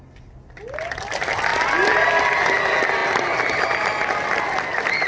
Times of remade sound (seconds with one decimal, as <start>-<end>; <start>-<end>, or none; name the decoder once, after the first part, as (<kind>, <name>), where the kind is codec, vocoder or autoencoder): none